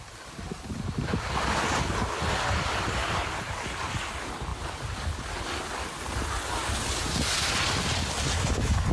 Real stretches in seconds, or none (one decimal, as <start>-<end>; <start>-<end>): 0.0-8.9